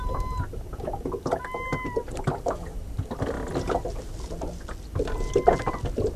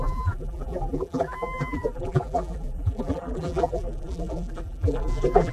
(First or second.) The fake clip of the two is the second